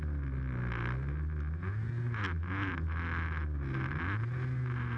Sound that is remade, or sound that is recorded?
recorded